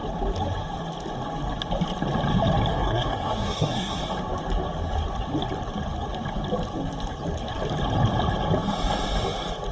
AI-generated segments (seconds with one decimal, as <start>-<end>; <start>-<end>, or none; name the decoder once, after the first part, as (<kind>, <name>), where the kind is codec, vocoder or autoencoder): 2.7-4.0 (codec, SNAC)